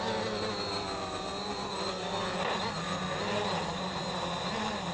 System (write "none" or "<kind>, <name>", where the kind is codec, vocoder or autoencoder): none